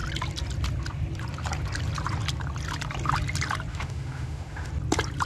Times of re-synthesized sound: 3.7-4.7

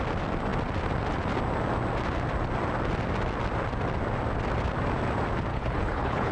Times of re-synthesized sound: 5.5-6.3

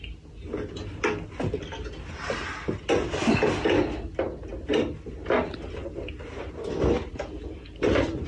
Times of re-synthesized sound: none

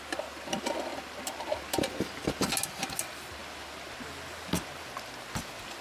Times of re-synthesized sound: none